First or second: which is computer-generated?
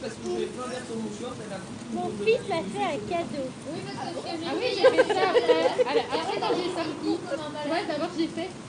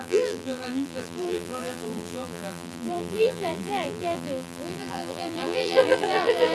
second